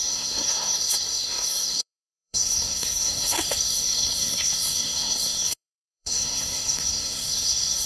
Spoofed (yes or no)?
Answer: yes